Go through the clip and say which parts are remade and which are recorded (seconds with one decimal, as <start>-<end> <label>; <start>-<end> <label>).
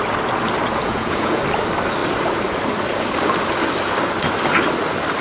0.0-0.8 recorded; 0.8-1.4 remade; 1.4-5.2 recorded